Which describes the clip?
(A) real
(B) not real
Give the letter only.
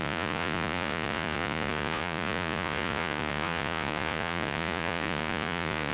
B